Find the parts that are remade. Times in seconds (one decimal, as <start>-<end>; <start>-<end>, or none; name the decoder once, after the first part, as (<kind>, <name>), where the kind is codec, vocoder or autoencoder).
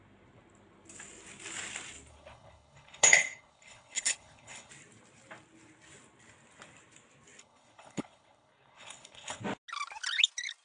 2.1-4.7 (codec, HILCodec); 7.4-9.4